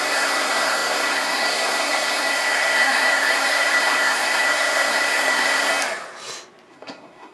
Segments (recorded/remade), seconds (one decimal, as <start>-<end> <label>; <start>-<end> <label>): 0.0-5.7 remade; 5.7-6.7 recorded; 6.7-7.3 remade